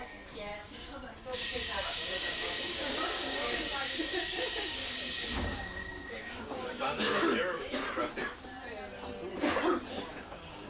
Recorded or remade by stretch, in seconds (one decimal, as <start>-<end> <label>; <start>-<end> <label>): 0.0-0.5 remade; 0.5-1.2 recorded; 1.2-7.8 remade; 7.8-9.9 recorded; 9.9-10.7 remade